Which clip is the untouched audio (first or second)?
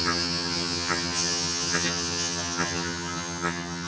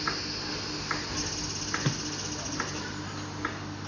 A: second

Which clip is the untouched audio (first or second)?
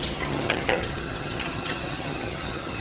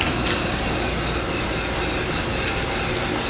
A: second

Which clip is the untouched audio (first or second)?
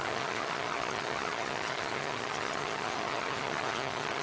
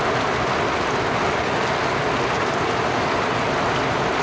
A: second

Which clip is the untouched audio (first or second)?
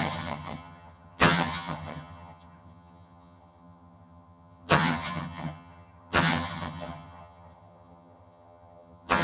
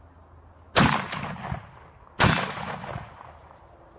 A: second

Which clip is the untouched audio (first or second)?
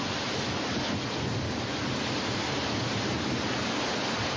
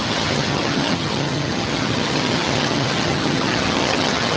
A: first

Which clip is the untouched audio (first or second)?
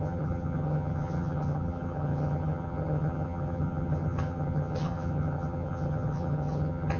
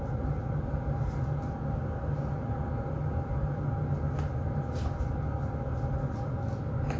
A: second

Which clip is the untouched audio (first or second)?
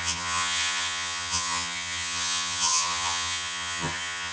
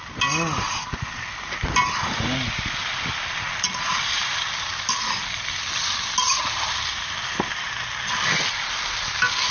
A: second